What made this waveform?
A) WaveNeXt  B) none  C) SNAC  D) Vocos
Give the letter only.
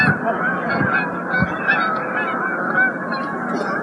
B